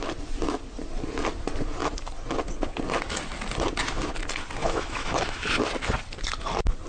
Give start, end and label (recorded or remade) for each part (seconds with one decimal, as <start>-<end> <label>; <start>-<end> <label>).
0.0-4.6 recorded; 4.6-5.5 remade; 5.5-6.9 recorded